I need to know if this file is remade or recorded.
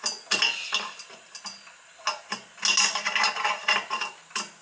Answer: recorded